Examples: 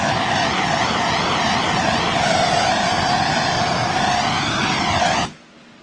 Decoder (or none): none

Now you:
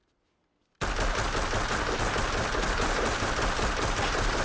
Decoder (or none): none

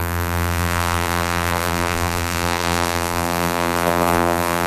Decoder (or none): vocoder, BigVGAN v2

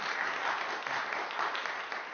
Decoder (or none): none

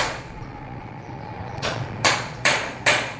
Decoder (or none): vocoder, Vocos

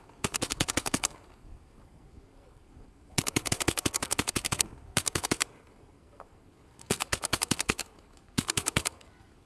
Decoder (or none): codec, SNAC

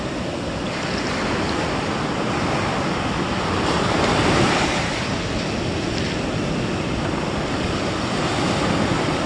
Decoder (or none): none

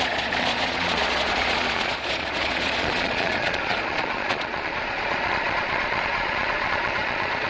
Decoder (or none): vocoder, Vocos